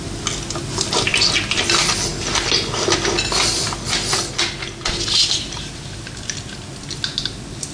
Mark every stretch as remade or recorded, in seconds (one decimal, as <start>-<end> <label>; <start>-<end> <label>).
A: 0.0-7.7 recorded